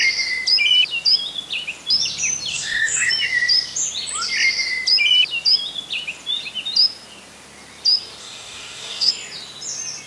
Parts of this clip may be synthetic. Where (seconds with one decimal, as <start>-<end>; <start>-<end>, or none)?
2.5-3.1; 8.2-9.1